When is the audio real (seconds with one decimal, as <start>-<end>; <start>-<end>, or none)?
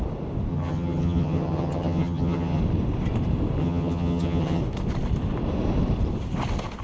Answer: 0.0-0.5; 2.6-3.6; 4.6-6.8